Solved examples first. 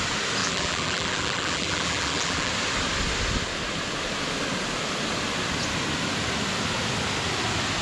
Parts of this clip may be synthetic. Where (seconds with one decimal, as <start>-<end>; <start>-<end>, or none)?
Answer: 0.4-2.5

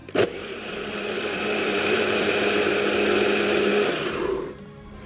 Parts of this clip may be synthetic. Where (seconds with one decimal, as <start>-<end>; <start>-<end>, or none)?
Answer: 0.0-2.5

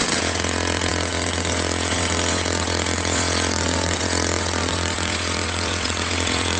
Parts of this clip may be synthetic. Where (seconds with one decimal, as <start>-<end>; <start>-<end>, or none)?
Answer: 0.0-6.6

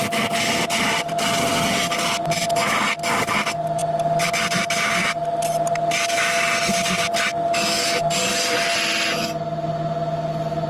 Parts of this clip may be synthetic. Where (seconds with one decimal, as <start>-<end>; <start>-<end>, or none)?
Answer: none

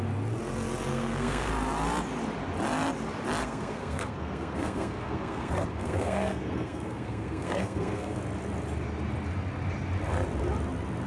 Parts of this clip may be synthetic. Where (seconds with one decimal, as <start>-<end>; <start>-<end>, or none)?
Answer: 0.9-1.5; 3.4-8.2

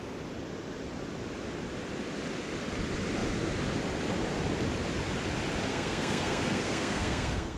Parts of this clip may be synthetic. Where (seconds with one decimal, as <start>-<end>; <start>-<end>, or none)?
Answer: 5.7-7.6

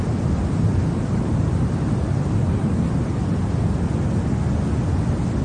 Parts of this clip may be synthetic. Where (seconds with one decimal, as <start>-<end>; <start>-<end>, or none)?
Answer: 0.4-2.6